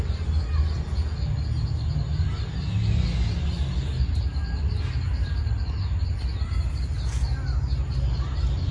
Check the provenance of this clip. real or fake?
real